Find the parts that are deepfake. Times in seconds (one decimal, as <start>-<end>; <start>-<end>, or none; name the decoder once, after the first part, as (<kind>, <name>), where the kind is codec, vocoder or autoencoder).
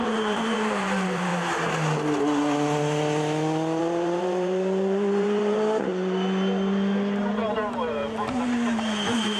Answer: 0.0-1.3 (vocoder, BigVGAN v2); 3.8-5.9; 7.2-9.4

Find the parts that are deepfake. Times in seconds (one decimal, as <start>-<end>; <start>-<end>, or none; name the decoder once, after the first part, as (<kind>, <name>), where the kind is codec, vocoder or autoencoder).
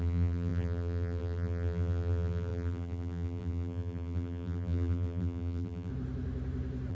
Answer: 0.0-5.9 (vocoder, BigVGAN v2)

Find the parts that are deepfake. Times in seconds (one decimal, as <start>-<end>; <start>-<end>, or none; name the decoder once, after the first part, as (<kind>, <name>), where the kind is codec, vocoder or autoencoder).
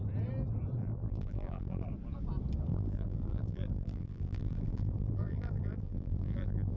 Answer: 0.8-1.9 (vocoder, BigVGAN v2); 2.7-6.8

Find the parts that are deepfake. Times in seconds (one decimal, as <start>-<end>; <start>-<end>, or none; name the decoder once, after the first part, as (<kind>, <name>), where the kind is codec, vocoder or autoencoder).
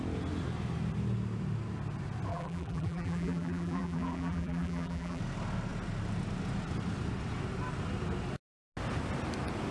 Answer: 2.3-5.2 (vocoder, BigVGAN v2)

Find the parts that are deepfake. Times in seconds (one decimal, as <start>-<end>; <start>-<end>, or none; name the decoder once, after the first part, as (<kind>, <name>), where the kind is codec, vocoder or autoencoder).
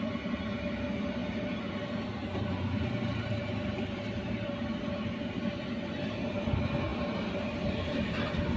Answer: 2.2-4.5 (vocoder, BigVGAN v2)